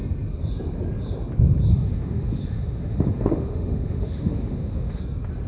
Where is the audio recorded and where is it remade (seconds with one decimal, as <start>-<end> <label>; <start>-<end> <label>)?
0.0-1.7 recorded; 1.7-5.0 remade; 5.0-5.5 recorded